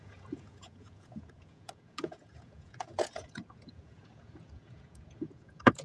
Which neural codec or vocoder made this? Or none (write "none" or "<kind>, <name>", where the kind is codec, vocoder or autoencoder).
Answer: vocoder, Vocos